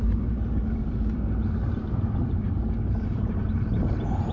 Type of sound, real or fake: fake